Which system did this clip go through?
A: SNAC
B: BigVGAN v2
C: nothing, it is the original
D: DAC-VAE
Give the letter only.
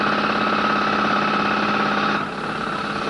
C